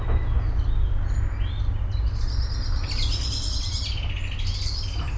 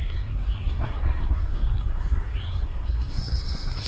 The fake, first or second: second